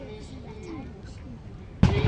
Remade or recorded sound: recorded